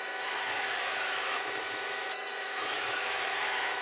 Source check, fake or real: fake